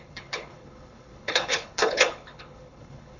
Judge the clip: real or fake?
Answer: fake